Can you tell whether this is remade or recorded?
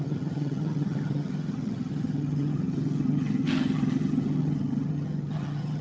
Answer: remade